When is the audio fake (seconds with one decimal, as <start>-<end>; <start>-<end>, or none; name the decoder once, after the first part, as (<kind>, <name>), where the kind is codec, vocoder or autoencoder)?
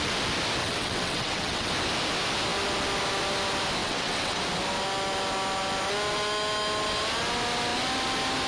0.6-1.7 (vocoder, WaveNeXt); 3.8-4.4